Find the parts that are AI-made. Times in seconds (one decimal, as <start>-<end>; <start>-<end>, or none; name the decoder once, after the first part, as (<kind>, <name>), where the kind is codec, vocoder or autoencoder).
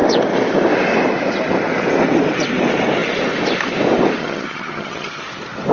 4.2-5.2 (vocoder, HiFi-GAN)